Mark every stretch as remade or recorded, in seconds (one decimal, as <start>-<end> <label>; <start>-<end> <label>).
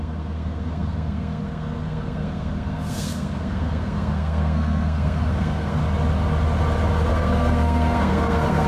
0.0-5.8 remade; 5.8-7.1 recorded; 7.1-8.7 remade